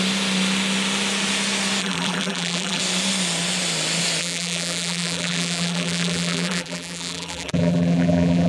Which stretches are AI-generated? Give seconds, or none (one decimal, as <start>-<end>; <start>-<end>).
1.8-2.8; 4.2-8.5